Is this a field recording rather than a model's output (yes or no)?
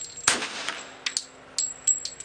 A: yes